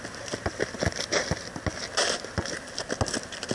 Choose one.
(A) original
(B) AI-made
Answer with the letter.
A